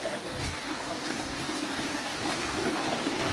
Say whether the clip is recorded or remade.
remade